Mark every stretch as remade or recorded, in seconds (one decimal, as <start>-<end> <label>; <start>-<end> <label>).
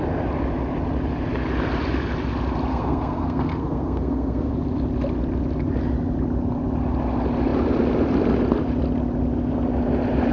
0.0-2.7 recorded; 2.7-4.5 remade; 4.5-10.3 recorded